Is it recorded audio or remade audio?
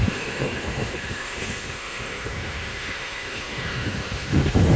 remade